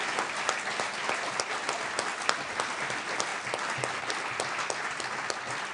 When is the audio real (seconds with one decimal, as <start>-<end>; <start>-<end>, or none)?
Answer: 0.0-5.7